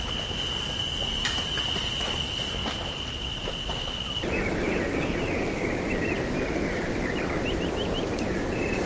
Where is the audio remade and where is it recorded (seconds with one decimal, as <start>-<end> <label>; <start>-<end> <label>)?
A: 0.0-8.9 recorded